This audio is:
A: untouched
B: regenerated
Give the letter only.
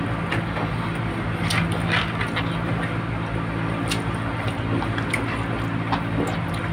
A